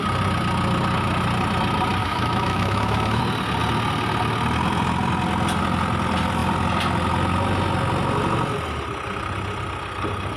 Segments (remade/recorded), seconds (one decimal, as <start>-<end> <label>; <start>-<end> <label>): 0.0-2.0 recorded; 2.0-3.2 remade; 3.2-10.4 recorded